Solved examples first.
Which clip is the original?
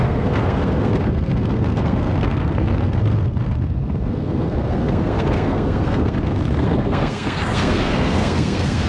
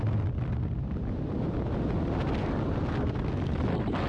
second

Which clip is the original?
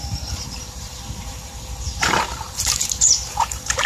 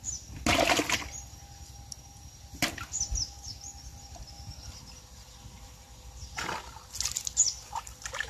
second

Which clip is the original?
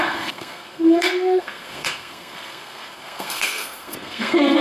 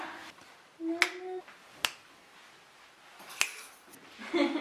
second